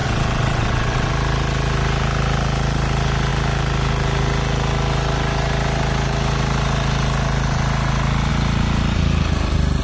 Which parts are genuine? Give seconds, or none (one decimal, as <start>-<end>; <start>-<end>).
1.1-9.8